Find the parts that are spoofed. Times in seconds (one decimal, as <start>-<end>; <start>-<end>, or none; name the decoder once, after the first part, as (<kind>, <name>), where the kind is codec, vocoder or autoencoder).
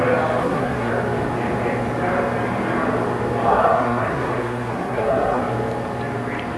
0.4-0.9 (codec, SNAC); 3.5-5.4